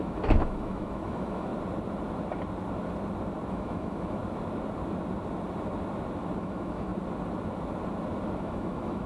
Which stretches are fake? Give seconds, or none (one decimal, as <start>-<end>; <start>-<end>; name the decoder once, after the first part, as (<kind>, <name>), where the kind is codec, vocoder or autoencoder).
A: 0.0-1.5 (autoencoder, DAC-VAE); 3.5-4.2; 6.4-6.9; 8.4-9.1